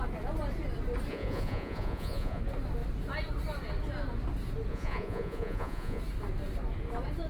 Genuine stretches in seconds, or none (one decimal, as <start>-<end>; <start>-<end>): 0.0-1.1; 2.4-4.7; 6.0-7.3